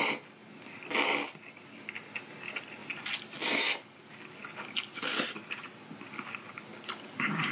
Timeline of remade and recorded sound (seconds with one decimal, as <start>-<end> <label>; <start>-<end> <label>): 0.0-7.5 recorded